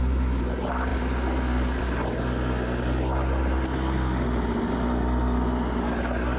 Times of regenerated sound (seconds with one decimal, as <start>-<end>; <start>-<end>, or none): none